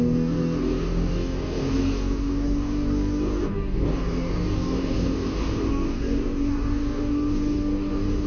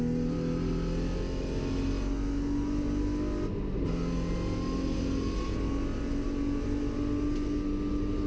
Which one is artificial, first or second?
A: first